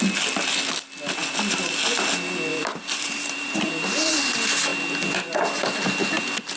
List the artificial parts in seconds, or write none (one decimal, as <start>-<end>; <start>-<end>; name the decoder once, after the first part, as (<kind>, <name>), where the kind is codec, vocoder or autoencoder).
1.2-1.7 (vocoder, BigVGAN v2); 2.5-4.2